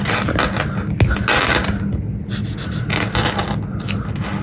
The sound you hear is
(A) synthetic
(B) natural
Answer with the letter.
B